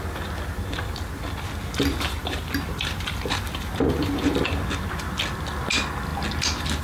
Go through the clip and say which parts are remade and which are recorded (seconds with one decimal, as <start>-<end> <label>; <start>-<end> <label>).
0.0-2.2 recorded; 2.2-4.4 remade; 4.4-6.8 recorded